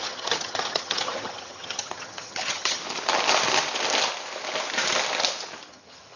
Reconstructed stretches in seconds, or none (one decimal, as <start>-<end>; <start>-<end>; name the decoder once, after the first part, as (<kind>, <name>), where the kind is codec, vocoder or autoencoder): 0.0-2.8 (vocoder, HiFi-GAN); 5.7-6.2